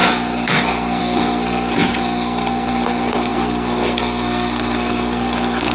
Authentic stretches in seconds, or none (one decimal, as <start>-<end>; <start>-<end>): none